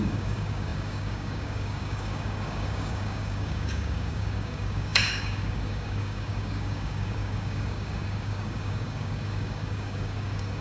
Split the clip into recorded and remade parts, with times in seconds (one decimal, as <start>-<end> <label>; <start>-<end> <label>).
0.0-10.6 remade